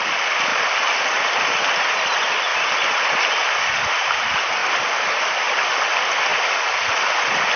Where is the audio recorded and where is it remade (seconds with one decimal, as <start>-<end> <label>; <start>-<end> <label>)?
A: 0.0-2.5 recorded; 2.5-3.2 remade; 3.2-4.6 recorded; 4.6-5.6 remade; 5.6-7.6 recorded